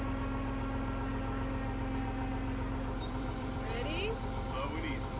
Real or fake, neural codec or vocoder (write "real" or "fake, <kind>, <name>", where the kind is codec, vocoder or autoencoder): fake, vocoder, BigVGAN v2